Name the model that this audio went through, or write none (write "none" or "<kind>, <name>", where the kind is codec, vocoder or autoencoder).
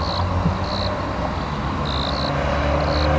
none